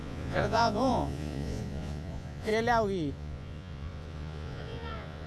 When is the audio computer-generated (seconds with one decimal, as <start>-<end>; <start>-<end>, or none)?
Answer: 0.0-2.5; 3.1-5.3